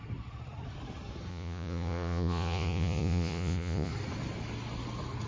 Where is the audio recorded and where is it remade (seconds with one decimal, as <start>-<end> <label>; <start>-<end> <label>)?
0.0-1.3 recorded; 1.3-3.9 remade; 3.9-5.3 recorded